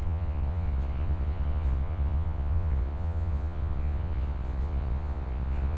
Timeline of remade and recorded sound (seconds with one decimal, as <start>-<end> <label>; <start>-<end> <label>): 0.0-5.8 remade